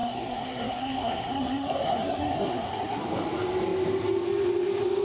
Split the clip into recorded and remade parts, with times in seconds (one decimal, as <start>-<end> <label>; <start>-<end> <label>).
0.0-3.0 remade; 3.0-5.0 recorded